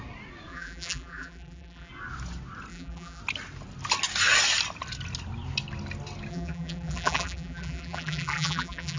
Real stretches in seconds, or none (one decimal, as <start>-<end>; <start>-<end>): 0.0-0.5; 1.9-2.7; 3.2-6.3